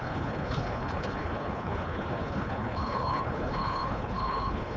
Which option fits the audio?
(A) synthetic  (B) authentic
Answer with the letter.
A